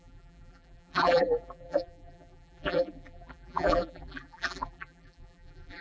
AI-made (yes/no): yes